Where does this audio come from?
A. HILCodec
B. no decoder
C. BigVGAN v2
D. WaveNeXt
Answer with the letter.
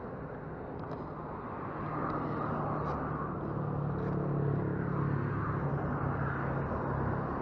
B